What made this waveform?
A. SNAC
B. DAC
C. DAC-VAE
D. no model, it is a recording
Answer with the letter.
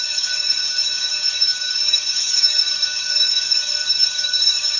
B